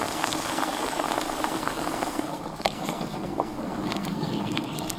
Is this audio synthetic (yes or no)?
yes